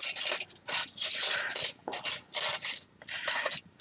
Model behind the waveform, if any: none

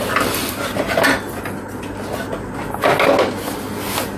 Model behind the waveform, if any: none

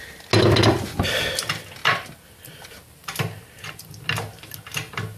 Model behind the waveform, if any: none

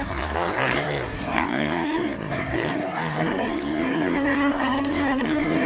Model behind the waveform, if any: codec, SNAC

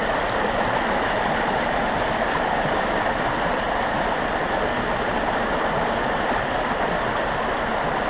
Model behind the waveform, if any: none